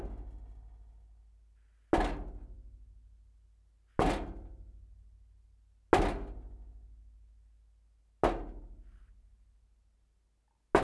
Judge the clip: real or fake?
real